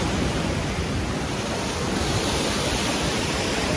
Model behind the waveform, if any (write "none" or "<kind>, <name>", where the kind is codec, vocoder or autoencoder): none